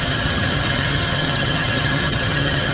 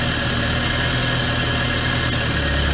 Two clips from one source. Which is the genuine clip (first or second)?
second